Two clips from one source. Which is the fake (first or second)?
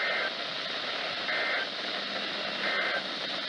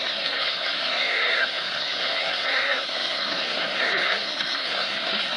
second